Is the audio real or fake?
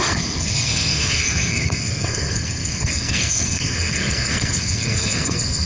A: fake